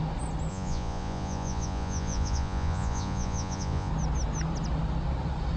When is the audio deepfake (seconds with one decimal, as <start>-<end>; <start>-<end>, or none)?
0.5-3.9